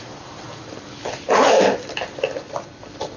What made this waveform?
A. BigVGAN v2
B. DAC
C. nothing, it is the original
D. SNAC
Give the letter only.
C